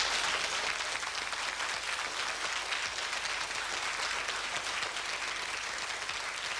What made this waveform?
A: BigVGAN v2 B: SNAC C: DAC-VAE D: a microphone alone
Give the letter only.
D